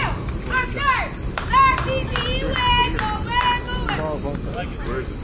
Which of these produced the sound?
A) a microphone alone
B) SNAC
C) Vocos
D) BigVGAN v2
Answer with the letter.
A